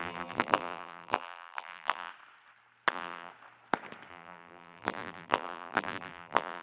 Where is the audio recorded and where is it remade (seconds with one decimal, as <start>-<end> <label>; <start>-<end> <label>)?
0.0-2.1 remade; 2.1-2.9 recorded; 2.9-3.3 remade; 3.3-4.1 recorded; 4.1-6.6 remade